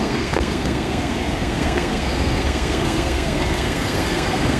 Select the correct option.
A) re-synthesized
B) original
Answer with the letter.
A